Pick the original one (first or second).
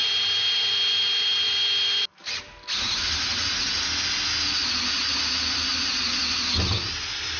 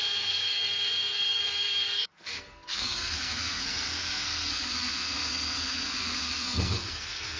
first